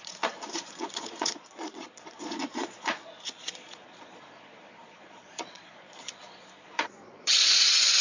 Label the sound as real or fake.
fake